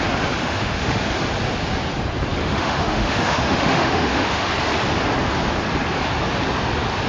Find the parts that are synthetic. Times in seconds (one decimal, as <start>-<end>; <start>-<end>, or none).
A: 0.4-1.1; 2.4-4.5